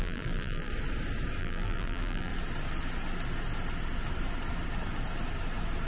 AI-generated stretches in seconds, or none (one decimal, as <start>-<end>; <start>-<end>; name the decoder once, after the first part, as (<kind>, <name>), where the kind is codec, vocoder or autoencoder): 0.0-0.7 (vocoder, BigVGAN v2); 1.4-2.3